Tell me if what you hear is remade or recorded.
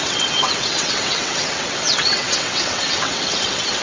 remade